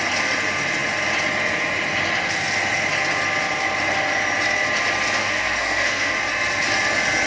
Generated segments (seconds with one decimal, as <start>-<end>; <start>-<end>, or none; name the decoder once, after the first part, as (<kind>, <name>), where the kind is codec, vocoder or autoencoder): 5.2-6.1 (codec, SNAC)